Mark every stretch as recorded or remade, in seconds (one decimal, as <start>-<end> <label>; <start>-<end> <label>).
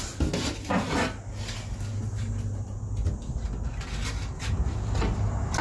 0.0-5.6 recorded